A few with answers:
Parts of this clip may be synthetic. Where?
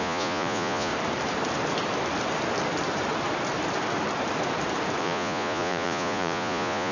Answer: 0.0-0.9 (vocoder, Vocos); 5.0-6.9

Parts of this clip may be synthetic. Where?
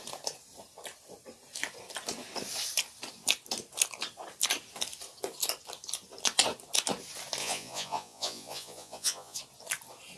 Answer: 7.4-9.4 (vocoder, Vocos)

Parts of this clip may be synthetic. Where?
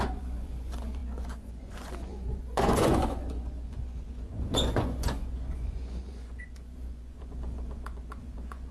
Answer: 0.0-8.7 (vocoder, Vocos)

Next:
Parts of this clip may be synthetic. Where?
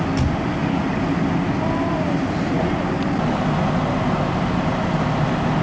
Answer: none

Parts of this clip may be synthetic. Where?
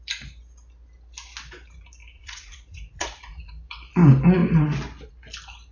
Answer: 2.0-3.5 (vocoder, Vocos)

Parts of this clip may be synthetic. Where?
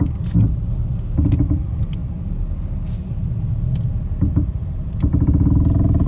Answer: none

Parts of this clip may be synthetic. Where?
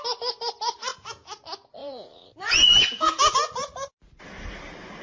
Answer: 0.9-1.4 (vocoder, Vocos); 1.8-3.3